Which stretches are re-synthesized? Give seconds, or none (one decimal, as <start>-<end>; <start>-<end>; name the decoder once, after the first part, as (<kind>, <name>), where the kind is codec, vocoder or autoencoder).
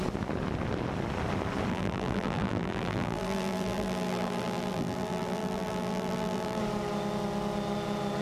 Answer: 1.7-6.6 (vocoder, BigVGAN v2)